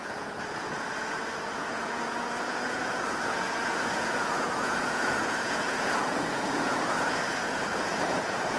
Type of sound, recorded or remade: remade